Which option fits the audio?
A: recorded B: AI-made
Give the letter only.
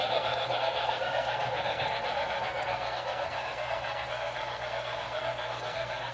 B